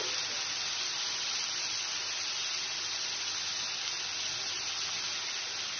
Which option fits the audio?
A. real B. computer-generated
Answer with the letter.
A